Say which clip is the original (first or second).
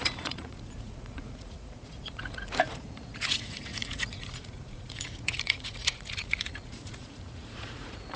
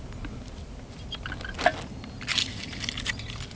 second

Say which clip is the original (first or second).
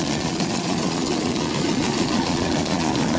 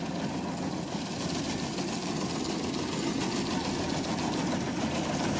second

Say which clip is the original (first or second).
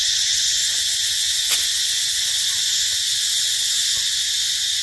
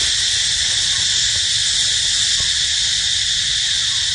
second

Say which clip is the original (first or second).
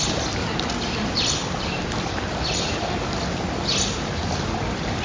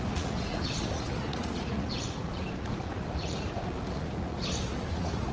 first